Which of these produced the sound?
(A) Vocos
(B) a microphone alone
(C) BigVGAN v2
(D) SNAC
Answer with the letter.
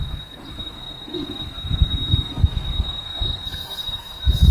D